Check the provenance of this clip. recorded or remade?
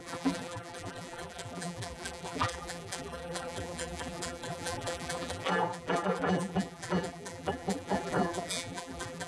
remade